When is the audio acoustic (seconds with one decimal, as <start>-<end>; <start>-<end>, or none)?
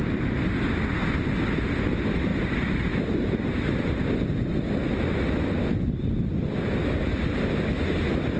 0.0-6.8; 7.4-8.4